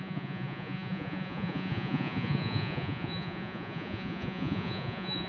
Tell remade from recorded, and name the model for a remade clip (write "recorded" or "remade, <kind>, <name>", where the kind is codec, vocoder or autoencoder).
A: remade, vocoder, Vocos